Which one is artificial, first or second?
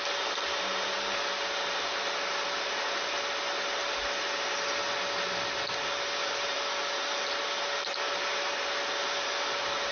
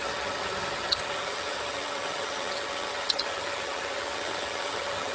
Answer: second